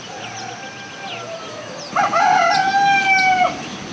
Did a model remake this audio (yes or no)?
no